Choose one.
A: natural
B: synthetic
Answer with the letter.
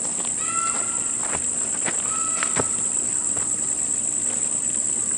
A